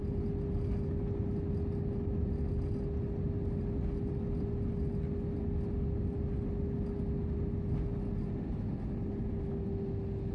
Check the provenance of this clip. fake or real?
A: real